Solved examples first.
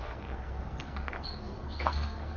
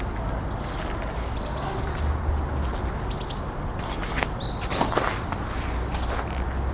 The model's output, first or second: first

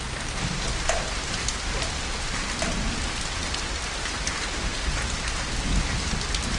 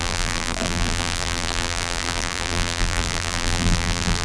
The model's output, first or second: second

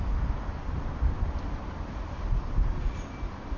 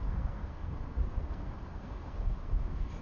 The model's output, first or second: second